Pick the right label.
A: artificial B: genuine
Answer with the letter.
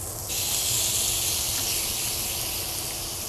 B